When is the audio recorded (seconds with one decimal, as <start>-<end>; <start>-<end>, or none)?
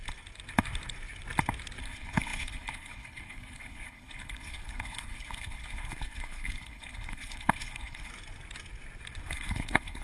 0.0-1.8; 8.1-9.3